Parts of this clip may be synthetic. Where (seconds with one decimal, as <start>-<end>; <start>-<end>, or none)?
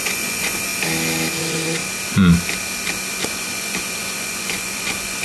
0.0-0.7; 1.4-1.8; 3.1-5.2